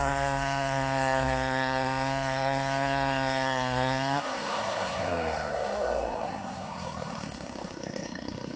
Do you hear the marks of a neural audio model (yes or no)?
yes